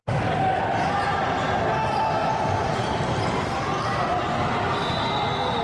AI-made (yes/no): no